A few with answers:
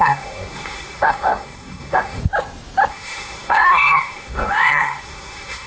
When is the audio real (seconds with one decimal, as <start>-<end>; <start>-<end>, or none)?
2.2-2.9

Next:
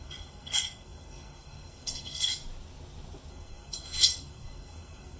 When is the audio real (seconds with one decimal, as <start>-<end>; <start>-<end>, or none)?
2.3-3.3

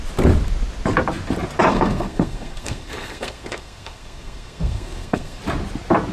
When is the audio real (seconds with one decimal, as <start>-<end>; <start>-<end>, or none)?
0.0-1.7; 5.4-6.1

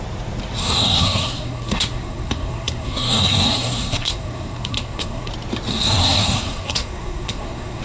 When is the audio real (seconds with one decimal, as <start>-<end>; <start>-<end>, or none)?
0.0-0.6; 5.3-5.7

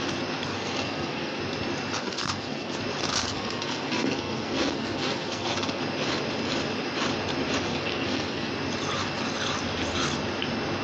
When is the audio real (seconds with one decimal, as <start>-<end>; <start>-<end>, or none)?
0.0-0.5; 1.4-2.0; 2.8-3.2; 5.8-7.7; 8.5-10.8

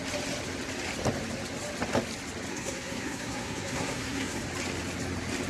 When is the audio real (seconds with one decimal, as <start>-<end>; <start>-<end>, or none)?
0.0-2.5; 4.4-5.5